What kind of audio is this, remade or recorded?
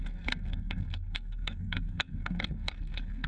remade